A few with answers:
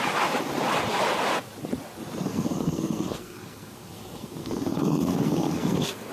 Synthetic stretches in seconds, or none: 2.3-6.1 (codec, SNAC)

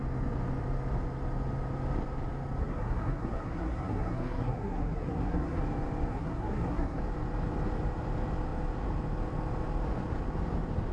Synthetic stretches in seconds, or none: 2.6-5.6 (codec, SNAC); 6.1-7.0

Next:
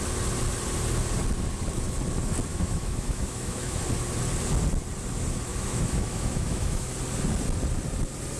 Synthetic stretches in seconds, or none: 2.5-3.8 (autoencoder, DAC-VAE); 5.5-6.9

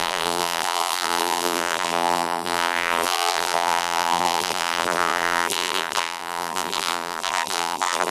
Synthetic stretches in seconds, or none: 0.0-8.1 (vocoder, BigVGAN v2)

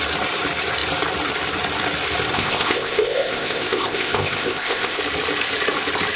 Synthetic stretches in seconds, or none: 2.3-5.0 (codec, ZipCodec)

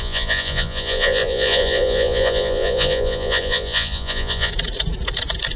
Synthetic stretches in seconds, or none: 0.0-4.5 (vocoder, Vocos)

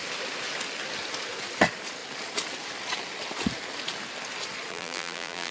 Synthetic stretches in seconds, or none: 4.7-5.5 (vocoder, BigVGAN v2)

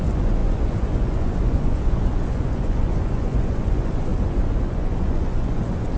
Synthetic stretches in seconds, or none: 0.0-6.0 (vocoder, Vocos)